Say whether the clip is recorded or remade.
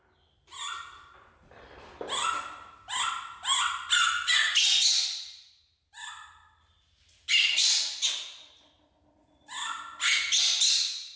recorded